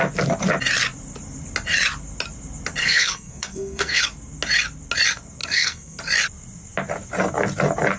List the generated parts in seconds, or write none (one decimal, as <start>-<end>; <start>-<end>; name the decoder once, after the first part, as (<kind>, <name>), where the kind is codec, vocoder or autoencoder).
2.8-4.0 (codec, SNAC); 5.4-6.0